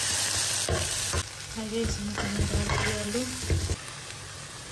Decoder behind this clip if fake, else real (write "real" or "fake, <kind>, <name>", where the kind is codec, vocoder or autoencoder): real